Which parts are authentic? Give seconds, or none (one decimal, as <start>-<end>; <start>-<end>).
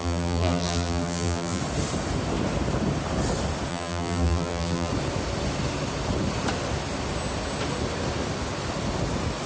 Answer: 1.6-3.7; 4.9-9.5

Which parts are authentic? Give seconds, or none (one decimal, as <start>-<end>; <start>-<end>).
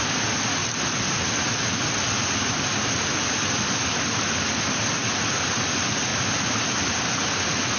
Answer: 0.0-0.6; 1.4-7.8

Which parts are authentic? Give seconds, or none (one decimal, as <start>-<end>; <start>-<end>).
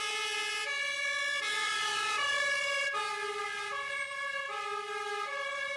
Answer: 0.0-1.5; 2.9-5.8